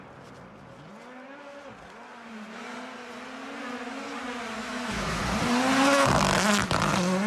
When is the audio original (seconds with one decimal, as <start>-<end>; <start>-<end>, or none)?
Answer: 0.0-4.6; 5.2-7.3